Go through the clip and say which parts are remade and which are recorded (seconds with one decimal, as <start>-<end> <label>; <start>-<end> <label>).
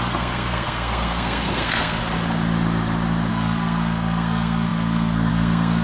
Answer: 0.0-2.0 remade; 2.0-3.3 recorded; 3.3-5.8 remade